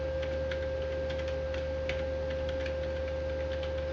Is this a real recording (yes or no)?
yes